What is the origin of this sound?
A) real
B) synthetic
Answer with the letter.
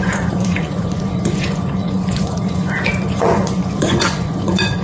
B